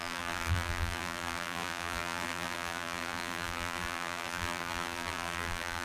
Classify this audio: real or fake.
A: fake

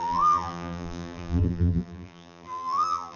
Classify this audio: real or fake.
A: fake